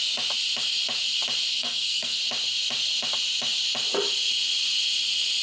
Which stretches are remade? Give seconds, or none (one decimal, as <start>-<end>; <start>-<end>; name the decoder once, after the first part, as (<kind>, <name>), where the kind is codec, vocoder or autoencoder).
1.5-2.2 (codec, SNAC)